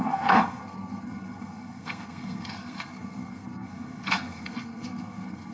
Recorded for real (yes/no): no